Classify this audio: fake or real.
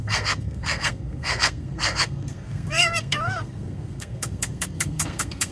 fake